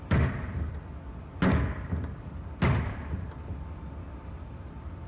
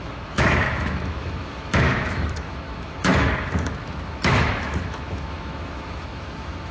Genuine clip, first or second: first